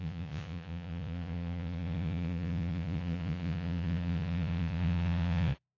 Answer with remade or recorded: remade